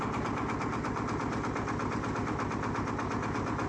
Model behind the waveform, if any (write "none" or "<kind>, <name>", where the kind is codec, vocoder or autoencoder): none